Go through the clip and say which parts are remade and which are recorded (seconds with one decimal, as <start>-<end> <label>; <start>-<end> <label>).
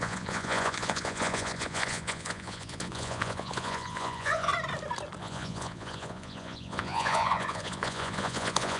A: 0.0-4.5 remade; 4.5-5.2 recorded; 5.2-8.8 remade